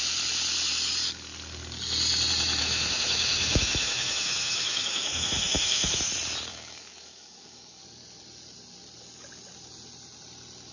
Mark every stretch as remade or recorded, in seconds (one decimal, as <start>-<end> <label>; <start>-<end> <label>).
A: 0.0-2.6 recorded; 2.6-6.1 remade; 6.1-6.5 recorded; 6.5-7.8 remade; 7.8-10.7 recorded